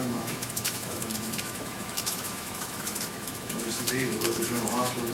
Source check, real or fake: fake